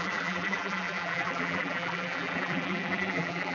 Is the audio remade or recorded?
remade